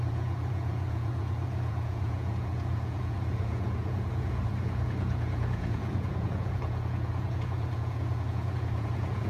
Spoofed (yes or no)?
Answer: yes